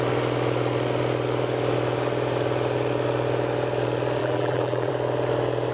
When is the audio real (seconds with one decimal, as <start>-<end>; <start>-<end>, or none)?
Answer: 0.0-4.2; 4.9-5.7